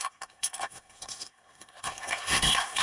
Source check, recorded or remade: remade